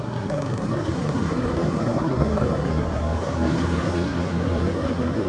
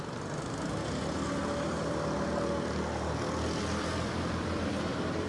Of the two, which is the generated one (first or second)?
first